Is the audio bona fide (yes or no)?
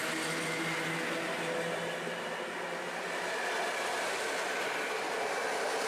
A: yes